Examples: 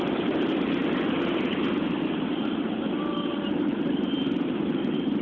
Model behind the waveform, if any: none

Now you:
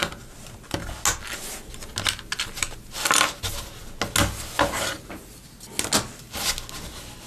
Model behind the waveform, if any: none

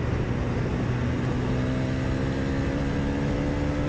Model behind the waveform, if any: none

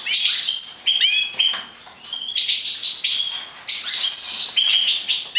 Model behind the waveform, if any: none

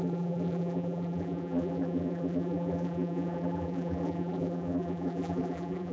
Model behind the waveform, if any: vocoder, BigVGAN v2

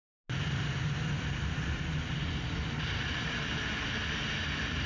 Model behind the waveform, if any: none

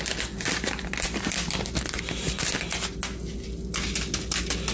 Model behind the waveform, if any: none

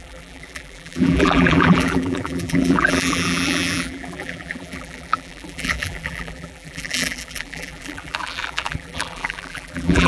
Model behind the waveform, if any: vocoder, BigVGAN v2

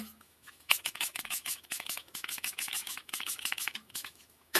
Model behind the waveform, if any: autoencoder, DAC-VAE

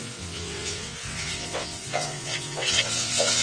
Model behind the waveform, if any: vocoder, WaveNeXt